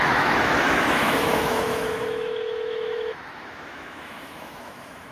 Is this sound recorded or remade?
remade